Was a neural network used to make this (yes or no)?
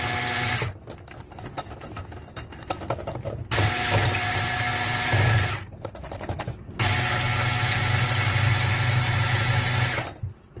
no